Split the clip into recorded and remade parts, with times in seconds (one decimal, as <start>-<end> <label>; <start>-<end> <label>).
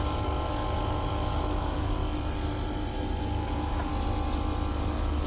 0.0-2.0 remade; 2.0-3.2 recorded; 3.2-3.9 remade; 3.9-4.7 recorded; 4.7-5.3 remade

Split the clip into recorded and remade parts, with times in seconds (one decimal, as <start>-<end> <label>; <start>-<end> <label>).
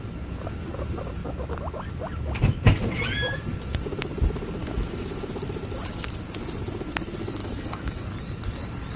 0.0-4.6 recorded; 4.6-5.1 remade; 5.1-7.4 recorded; 7.4-8.0 remade; 8.0-9.0 recorded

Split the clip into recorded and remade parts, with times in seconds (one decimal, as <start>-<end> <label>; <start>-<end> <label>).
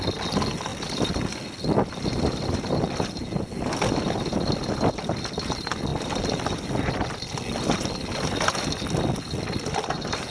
0.0-10.3 recorded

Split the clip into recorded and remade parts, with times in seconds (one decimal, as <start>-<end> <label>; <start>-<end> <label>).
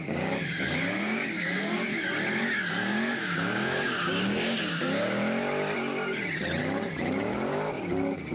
0.0-1.9 remade; 1.9-2.7 recorded; 2.7-5.2 remade; 5.2-6.6 recorded; 6.6-8.3 remade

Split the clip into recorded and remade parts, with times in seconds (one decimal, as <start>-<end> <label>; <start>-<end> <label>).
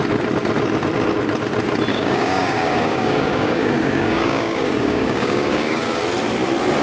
0.0-1.9 recorded; 1.9-6.0 remade; 6.0-6.8 recorded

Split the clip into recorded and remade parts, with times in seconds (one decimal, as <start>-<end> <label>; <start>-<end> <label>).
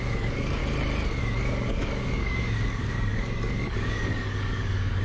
0.0-0.6 remade; 0.6-1.2 recorded; 1.2-5.0 remade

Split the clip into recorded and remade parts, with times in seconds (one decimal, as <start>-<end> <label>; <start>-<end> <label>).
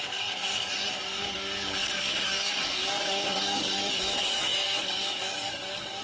0.0-6.0 remade